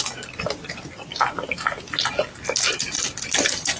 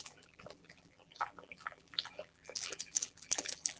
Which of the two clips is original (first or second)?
first